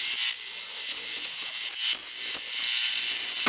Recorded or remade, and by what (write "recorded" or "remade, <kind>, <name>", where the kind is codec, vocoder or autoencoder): recorded